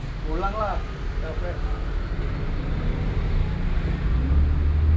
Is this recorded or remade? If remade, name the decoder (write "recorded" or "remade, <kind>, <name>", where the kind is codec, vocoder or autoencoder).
recorded